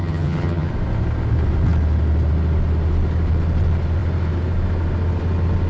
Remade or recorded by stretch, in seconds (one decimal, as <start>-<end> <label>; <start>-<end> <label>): 0.0-0.7 remade; 0.7-5.7 recorded

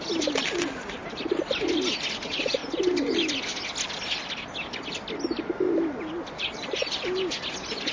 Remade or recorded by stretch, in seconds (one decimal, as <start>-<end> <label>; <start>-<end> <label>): 0.0-7.9 recorded

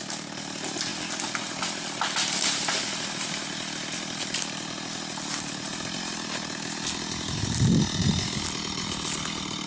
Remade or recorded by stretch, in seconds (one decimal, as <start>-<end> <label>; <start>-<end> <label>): 0.0-9.7 recorded

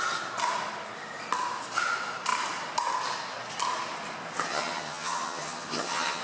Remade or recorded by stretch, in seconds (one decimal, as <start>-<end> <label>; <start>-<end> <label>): 0.0-4.5 recorded; 4.5-6.2 remade

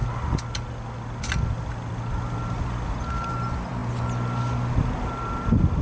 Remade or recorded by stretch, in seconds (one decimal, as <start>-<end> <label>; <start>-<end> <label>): 0.0-5.8 recorded

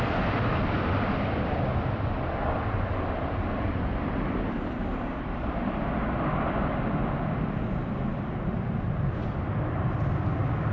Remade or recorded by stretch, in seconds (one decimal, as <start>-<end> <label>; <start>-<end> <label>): 0.0-10.7 recorded

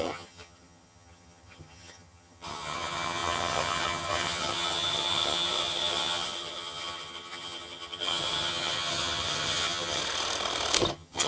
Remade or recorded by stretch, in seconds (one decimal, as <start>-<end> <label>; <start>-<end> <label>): 0.0-10.0 remade; 10.0-10.9 recorded; 10.9-11.3 remade

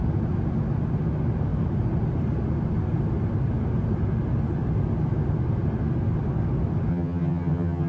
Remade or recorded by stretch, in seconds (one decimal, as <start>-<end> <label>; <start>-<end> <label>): 0.0-6.9 recorded; 6.9-7.9 remade